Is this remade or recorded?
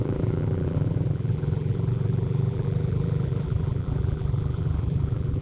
remade